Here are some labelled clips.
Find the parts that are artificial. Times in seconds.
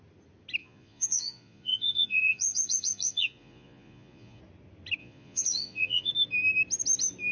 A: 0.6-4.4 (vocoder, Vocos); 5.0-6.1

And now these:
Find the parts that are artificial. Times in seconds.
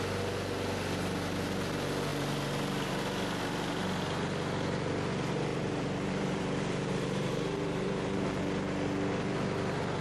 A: 5.5-8.4 (vocoder, BigVGAN v2)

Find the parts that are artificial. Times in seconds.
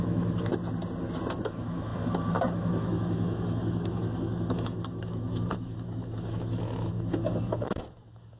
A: 0.0-0.5 (autoencoder, DAC-VAE); 1.3-8.4